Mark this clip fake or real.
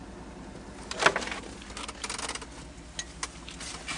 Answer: real